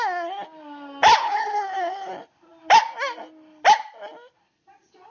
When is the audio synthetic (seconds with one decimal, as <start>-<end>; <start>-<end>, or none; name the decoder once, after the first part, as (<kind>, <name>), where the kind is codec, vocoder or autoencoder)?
1.2-2.1 (codec, HILCodec)

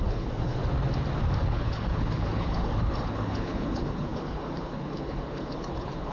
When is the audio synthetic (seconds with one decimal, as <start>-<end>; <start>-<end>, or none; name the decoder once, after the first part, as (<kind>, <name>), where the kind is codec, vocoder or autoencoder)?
0.0-0.6 (codec, HILCodec); 1.4-6.1